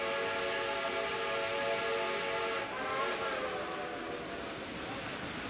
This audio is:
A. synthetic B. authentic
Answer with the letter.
B